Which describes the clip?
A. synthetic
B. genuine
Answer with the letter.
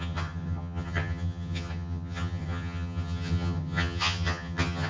A